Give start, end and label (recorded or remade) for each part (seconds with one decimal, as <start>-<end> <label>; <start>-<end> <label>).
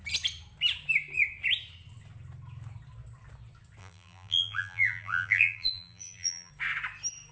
0.0-3.8 recorded; 3.8-6.5 remade; 6.5-7.3 recorded